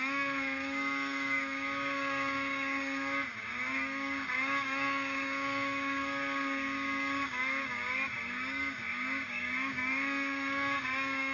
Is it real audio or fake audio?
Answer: fake